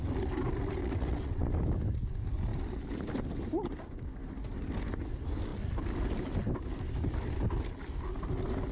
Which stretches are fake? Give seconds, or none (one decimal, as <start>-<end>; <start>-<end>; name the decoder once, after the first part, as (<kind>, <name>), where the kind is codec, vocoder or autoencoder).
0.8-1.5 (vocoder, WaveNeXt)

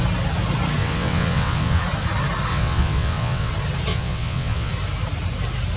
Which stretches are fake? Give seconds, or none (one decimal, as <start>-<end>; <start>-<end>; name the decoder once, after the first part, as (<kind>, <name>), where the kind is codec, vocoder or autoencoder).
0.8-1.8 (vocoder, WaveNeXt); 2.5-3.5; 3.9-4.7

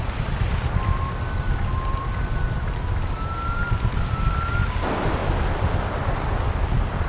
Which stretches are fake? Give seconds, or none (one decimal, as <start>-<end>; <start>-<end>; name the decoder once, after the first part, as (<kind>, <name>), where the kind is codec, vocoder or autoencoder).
none

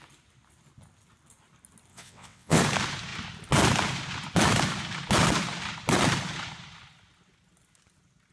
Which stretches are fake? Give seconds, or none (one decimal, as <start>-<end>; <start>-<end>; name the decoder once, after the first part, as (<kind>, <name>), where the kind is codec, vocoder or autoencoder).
1.9-2.6 (vocoder, WaveNeXt)

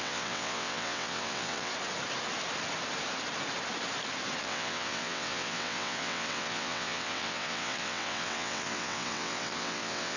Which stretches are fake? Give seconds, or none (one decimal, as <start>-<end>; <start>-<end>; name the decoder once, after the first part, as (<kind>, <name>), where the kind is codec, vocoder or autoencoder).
0.0-1.7 (vocoder, WaveNeXt); 4.4-10.2

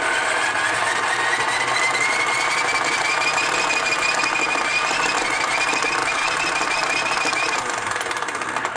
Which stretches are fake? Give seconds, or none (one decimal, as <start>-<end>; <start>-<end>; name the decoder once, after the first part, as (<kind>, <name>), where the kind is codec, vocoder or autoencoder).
none